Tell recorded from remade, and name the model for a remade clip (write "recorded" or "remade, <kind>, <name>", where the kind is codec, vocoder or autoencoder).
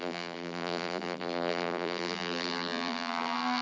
remade, vocoder, BigVGAN v2